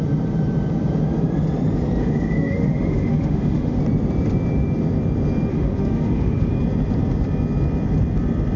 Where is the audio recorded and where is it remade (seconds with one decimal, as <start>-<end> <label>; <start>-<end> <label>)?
0.0-2.0 recorded; 2.0-3.8 remade; 3.8-5.5 recorded; 5.5-6.5 remade; 6.5-8.6 recorded